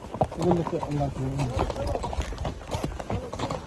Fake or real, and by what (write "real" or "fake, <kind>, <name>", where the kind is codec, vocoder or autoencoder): real